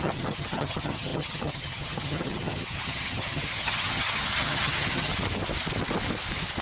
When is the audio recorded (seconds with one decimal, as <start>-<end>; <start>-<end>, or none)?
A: 5.1-6.6